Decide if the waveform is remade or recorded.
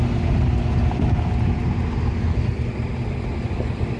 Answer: recorded